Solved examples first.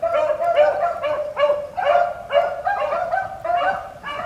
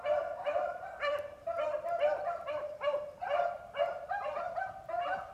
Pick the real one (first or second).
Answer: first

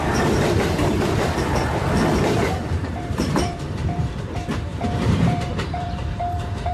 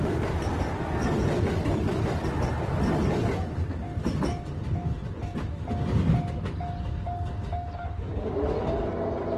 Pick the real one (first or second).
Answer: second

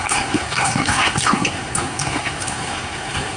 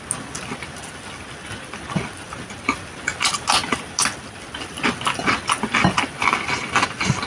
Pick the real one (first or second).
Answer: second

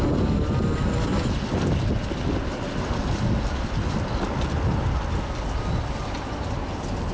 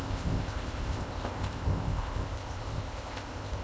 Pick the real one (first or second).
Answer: first